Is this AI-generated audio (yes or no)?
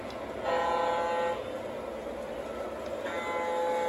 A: no